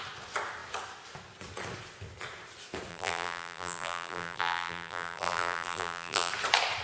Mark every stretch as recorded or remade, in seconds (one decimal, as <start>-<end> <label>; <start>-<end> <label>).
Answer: 0.0-2.9 recorded; 2.9-6.3 remade; 6.3-6.8 recorded

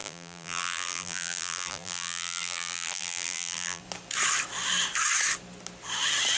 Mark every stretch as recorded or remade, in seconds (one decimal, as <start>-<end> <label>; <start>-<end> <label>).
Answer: 0.0-3.8 remade; 3.8-6.4 recorded

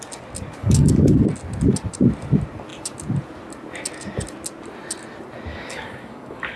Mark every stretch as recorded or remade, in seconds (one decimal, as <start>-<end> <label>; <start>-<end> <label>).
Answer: 0.0-0.6 recorded; 0.6-1.2 remade; 1.2-5.5 recorded; 5.5-6.6 remade

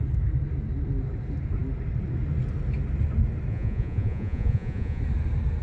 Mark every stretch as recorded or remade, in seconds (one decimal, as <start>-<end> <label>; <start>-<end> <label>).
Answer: 0.0-3.5 recorded; 3.5-5.0 remade; 5.0-5.6 recorded